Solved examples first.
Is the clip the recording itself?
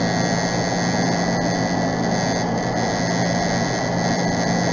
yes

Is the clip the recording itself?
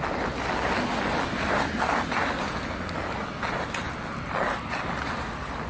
yes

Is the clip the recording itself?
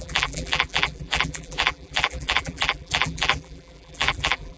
no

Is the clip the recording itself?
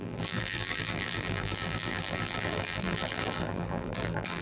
no